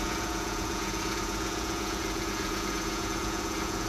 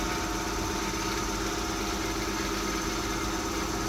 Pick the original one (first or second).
second